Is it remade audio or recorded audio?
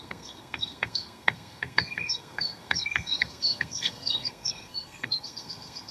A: remade